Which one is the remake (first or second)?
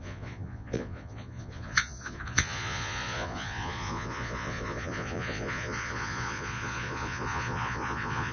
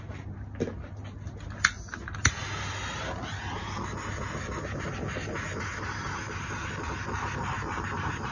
first